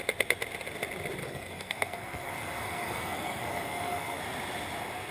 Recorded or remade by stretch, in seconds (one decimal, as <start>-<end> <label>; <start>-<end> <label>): 0.0-1.2 recorded; 1.2-4.2 remade; 4.2-5.1 recorded